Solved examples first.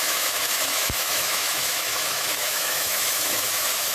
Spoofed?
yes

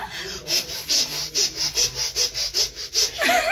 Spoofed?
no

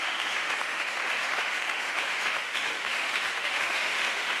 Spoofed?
yes